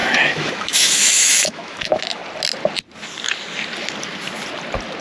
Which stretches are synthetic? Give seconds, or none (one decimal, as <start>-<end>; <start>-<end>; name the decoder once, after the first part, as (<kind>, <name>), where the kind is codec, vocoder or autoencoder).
0.0-2.2 (autoencoder, DAC-VAE)